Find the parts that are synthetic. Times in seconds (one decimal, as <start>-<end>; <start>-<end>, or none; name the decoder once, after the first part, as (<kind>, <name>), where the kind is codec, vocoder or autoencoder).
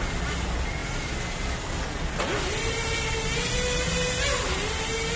none